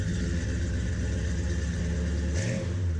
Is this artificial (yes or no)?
no